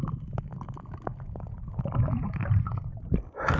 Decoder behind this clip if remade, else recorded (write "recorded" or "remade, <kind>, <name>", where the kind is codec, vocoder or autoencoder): recorded